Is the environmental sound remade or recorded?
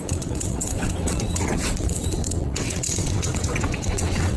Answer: remade